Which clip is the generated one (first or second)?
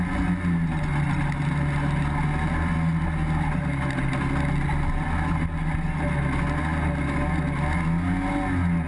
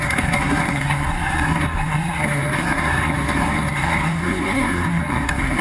second